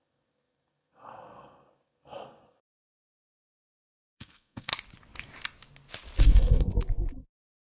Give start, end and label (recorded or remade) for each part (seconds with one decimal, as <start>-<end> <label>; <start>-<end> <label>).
0.0-4.7 remade; 4.7-6.2 recorded; 6.2-6.7 remade; 6.7-7.6 recorded

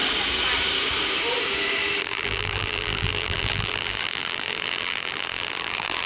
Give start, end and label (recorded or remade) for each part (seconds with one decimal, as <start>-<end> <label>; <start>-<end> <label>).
0.0-2.0 recorded; 2.0-6.1 remade

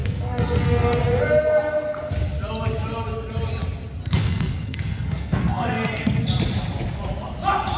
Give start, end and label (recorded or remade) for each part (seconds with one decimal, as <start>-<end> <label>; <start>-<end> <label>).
0.0-1.0 remade; 1.0-4.0 recorded; 4.0-6.2 remade; 6.2-7.8 recorded

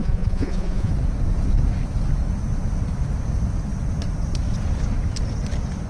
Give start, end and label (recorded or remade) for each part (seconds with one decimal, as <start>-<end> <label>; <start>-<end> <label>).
0.0-0.9 remade; 0.9-5.9 recorded